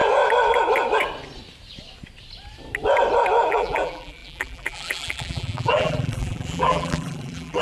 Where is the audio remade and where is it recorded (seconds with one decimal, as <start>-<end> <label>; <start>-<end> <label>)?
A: 0.0-3.5 recorded; 3.5-7.6 remade